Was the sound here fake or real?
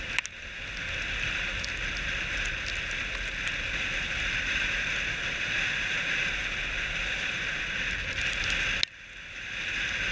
real